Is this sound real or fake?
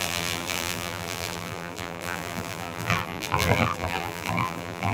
fake